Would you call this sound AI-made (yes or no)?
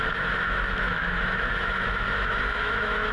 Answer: yes